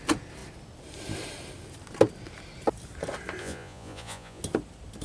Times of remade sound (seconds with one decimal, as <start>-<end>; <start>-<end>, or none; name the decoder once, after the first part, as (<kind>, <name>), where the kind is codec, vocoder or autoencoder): 3.4-4.4 (vocoder, Vocos)